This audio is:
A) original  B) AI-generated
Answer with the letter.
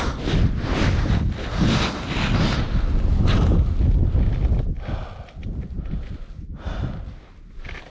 A